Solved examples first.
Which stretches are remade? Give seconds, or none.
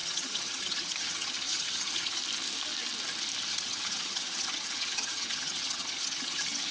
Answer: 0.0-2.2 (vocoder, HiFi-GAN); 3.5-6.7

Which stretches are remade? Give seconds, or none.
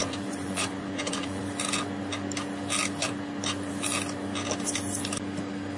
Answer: 0.0-1.4 (vocoder, Vocos)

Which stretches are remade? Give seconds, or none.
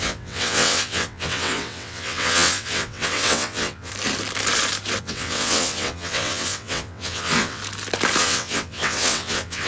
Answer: 0.0-3.9 (vocoder, WaveNeXt); 5.0-7.6; 8.2-9.7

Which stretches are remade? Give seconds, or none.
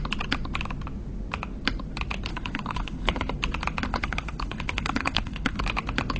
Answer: 2.3-3.2 (codec, HILCodec); 3.9-5.6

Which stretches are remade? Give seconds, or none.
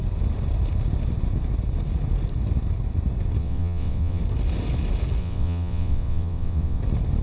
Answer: 3.4-4.2 (vocoder, WaveNeXt); 5.2-6.8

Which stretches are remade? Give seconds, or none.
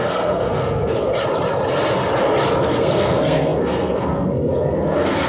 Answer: 0.0-1.1 (codec, SNAC); 2.6-5.3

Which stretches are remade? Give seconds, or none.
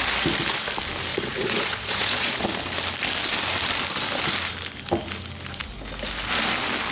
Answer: 1.1-2.4 (vocoder, Vocos)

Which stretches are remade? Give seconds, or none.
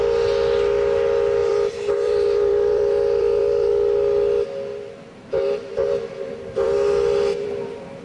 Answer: 1.4-3.7 (vocoder, BigVGAN v2); 4.7-8.0